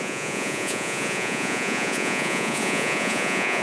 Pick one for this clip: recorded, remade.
remade